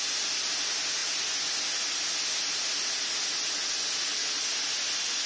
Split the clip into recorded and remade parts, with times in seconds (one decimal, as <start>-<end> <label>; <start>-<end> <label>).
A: 0.0-5.3 recorded